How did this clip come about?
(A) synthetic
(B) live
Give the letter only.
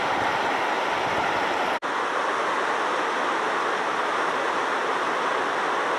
B